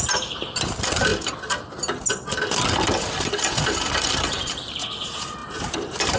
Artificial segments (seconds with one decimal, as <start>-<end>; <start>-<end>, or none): 0.0-1.1; 4.1-6.2